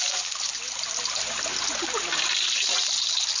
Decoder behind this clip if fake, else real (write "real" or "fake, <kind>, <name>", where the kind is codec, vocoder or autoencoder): real